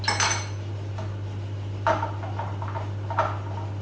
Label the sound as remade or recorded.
recorded